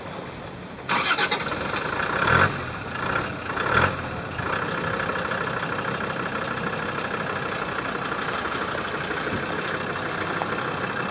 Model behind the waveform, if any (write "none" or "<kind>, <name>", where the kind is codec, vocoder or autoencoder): none